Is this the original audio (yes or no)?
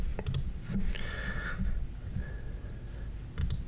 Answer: yes